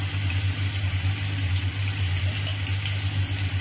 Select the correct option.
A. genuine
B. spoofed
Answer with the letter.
A